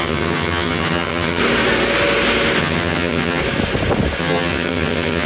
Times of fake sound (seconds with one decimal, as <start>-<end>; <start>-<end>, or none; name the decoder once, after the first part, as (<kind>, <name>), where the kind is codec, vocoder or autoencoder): 0.0-1.4 (vocoder, HiFi-GAN); 2.6-3.4; 4.2-5.3